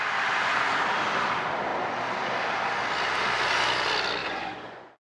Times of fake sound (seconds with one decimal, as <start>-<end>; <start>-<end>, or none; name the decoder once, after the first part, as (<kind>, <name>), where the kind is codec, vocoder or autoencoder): 4.2-5.1 (vocoder, Vocos)